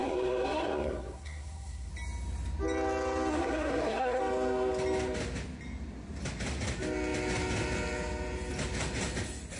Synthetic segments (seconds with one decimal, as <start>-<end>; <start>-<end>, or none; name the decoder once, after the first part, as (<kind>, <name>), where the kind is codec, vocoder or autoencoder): 0.0-1.9 (codec, SNAC); 3.3-4.2